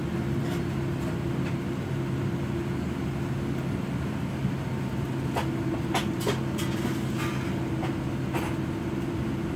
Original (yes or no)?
yes